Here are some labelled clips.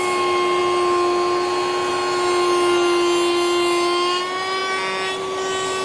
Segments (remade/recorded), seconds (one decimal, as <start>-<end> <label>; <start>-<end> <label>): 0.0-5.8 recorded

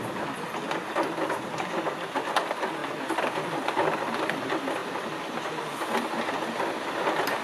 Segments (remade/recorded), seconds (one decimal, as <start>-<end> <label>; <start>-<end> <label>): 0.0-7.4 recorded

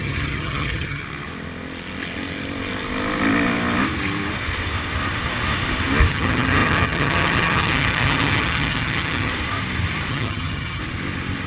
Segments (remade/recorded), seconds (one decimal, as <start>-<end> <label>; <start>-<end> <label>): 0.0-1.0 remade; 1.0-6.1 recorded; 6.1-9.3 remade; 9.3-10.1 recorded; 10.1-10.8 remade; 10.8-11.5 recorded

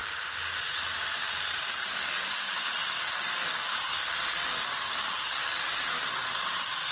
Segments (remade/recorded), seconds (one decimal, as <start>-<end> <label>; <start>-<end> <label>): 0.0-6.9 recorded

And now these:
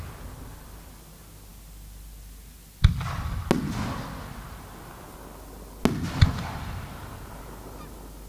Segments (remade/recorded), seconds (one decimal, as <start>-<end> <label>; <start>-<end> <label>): 0.0-8.3 recorded

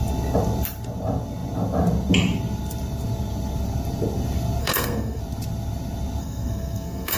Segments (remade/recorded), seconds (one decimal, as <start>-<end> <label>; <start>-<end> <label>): 0.0-4.6 recorded; 4.6-5.2 remade; 5.2-6.2 recorded; 6.2-7.2 remade